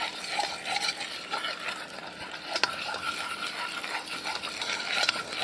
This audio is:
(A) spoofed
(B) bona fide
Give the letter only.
B